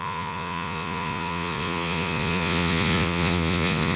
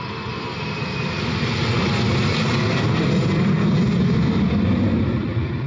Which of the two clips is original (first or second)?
second